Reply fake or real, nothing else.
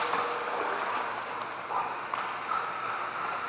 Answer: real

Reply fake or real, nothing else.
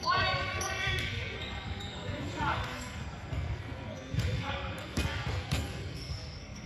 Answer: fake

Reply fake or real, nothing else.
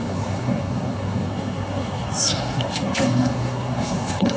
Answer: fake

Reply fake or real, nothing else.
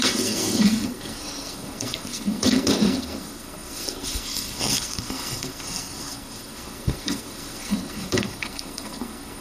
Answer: fake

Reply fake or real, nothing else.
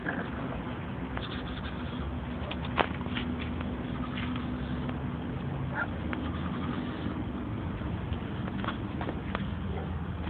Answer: real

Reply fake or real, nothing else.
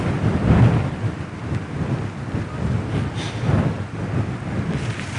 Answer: real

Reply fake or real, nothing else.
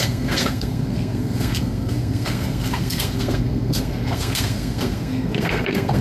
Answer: fake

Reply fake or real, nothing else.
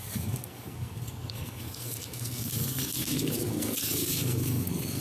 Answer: fake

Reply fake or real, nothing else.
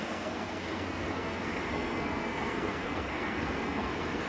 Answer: fake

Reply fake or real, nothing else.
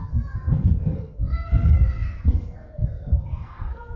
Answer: fake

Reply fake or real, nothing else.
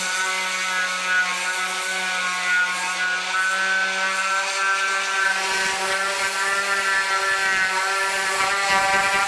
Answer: real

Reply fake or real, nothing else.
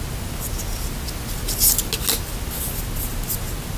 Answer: real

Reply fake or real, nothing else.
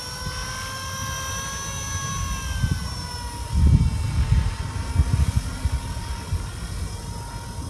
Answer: real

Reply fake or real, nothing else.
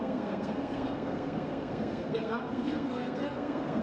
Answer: fake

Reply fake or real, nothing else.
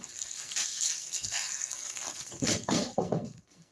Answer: fake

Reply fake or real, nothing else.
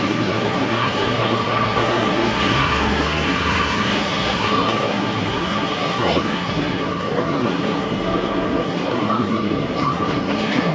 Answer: fake